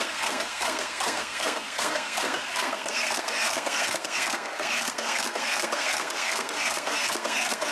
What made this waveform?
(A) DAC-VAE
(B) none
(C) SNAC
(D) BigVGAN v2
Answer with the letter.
C